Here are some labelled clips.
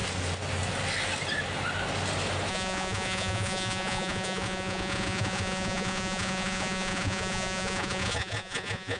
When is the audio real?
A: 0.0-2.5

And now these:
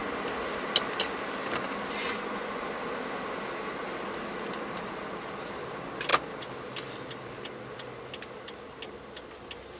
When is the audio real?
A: 0.0-2.0; 2.6-9.8